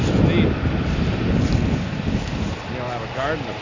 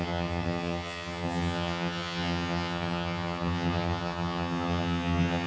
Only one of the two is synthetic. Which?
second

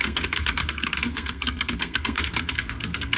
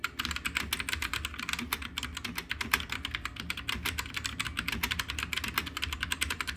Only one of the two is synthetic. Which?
first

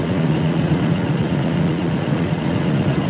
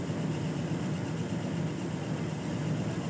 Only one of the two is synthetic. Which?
first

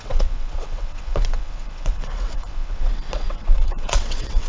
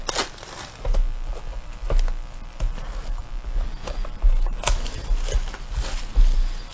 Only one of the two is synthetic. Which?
first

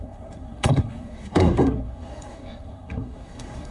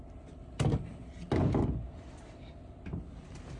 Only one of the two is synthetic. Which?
first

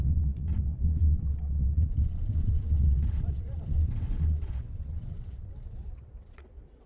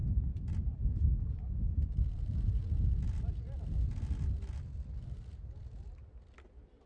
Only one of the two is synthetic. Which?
first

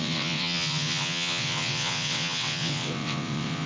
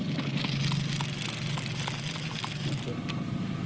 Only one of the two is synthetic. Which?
first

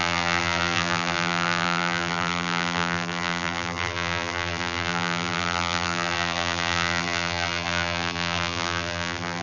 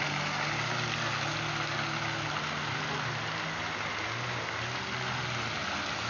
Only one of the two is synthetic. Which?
first